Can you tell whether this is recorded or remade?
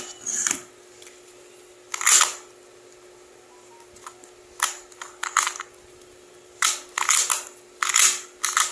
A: recorded